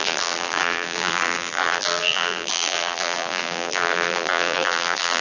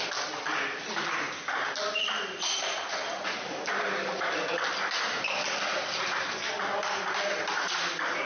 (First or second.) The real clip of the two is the second